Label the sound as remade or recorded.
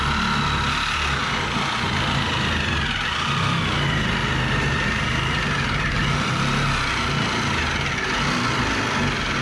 recorded